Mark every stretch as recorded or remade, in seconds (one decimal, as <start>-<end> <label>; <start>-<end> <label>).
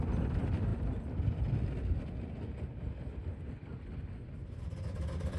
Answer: 0.0-5.4 recorded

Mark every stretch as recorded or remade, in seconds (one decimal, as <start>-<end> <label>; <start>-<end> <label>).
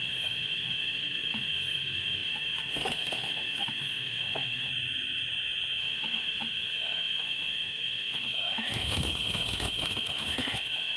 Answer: 0.0-4.7 remade; 4.7-5.8 recorded; 5.8-11.0 remade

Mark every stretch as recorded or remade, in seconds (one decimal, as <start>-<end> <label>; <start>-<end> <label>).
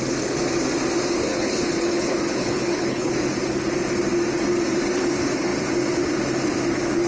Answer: 0.0-1.3 recorded; 1.3-3.1 remade; 3.1-7.1 recorded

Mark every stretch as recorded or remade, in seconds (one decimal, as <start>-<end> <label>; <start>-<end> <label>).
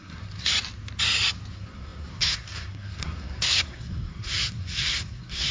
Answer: 0.0-0.5 remade; 0.5-1.5 recorded; 1.5-5.5 remade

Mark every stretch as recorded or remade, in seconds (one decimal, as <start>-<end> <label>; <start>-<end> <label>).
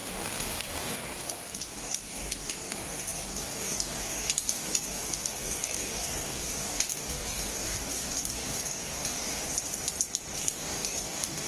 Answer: 0.0-9.4 remade; 9.4-10.4 recorded; 10.4-11.5 remade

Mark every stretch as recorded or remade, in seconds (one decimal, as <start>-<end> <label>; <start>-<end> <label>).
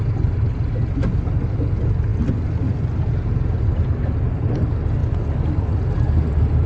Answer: 0.0-6.7 recorded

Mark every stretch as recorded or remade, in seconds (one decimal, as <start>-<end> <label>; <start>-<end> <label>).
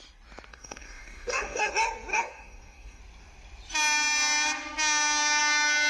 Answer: 0.0-0.5 recorded; 0.5-1.7 remade; 1.7-2.1 recorded; 2.1-3.0 remade; 3.0-5.9 recorded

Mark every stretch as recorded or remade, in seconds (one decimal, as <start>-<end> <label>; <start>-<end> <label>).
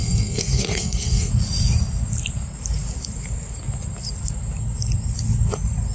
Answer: 0.0-1.3 remade; 1.3-5.9 recorded